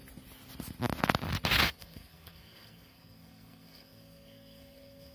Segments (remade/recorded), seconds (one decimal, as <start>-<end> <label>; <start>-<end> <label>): 0.0-1.6 recorded; 1.6-5.1 remade